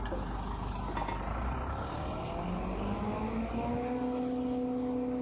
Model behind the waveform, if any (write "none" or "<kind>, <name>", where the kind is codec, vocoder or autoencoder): none